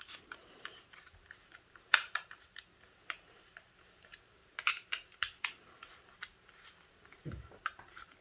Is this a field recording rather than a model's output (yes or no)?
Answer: no